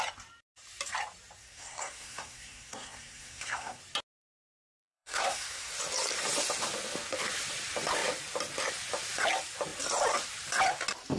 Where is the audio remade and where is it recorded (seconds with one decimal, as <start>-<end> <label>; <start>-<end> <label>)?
0.0-1.4 recorded; 1.4-3.8 remade; 3.8-4.2 recorded; 4.2-5.7 remade; 5.7-11.2 recorded